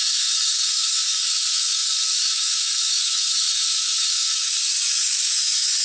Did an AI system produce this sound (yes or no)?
yes